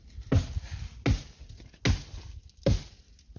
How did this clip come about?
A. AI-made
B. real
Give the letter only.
B